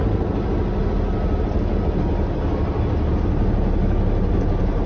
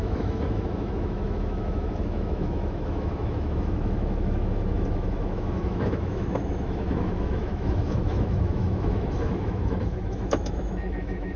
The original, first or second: first